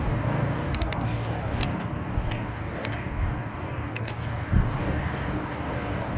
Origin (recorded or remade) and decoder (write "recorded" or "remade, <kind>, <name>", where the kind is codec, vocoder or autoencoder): remade, codec, DAC